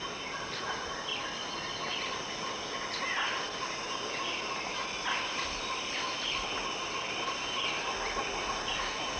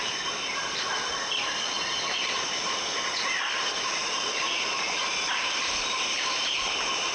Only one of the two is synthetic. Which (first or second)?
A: second